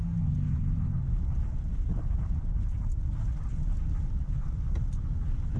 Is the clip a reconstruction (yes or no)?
no